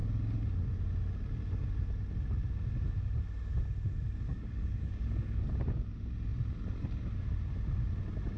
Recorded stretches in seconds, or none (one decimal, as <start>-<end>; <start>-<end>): 0.0-4.3; 5.5-8.4